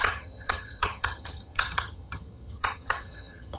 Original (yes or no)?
no